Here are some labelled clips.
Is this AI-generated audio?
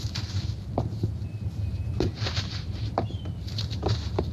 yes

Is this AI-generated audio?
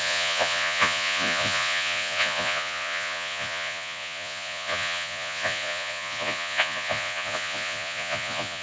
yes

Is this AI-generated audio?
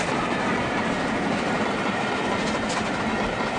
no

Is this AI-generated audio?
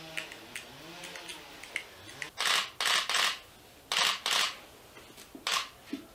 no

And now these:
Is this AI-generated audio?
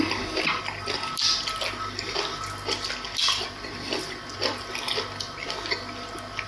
no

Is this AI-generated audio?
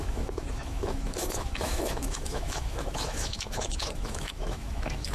yes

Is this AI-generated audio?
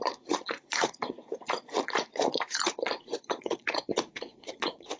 yes